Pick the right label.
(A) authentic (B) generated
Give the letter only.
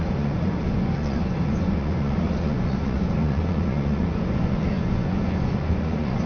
B